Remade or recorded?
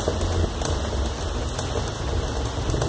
recorded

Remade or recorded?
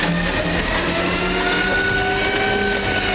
recorded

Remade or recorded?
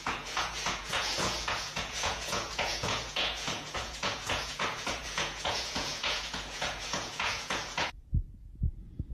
remade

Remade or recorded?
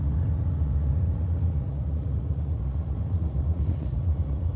remade